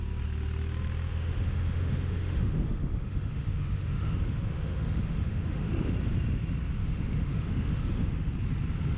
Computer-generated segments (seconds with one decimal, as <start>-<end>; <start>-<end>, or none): 1.1-5.9; 6.8-8.3

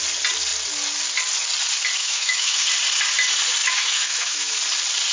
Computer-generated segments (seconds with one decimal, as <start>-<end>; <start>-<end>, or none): 2.0-2.7; 3.6-4.5

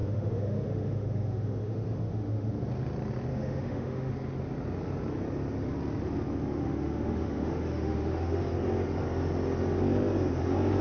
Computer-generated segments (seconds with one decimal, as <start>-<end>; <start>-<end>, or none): 0.0-2.5; 3.3-4.1; 6.6-8.4

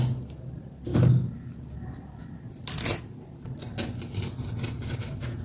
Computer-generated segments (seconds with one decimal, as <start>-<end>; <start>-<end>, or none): none

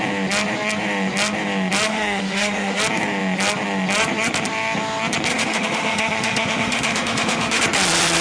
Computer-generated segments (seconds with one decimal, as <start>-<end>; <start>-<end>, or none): 1.9-2.8; 5.3-7.6

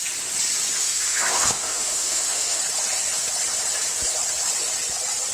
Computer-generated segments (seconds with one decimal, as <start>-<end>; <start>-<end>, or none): 0.8-2.6

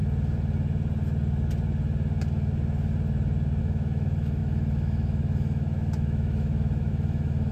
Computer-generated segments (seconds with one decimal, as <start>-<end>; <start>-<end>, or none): 3.6-7.5

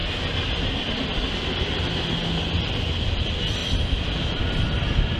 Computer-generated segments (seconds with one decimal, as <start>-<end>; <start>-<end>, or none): none